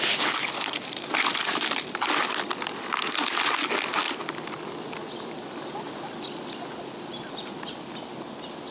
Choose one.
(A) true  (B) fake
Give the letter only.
A